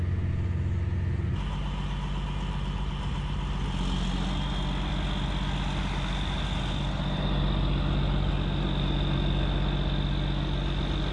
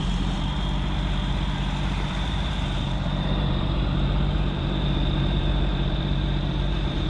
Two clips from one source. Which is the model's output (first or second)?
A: second